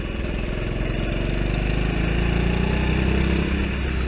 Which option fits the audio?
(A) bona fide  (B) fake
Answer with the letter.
A